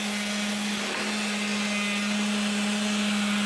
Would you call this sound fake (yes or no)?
no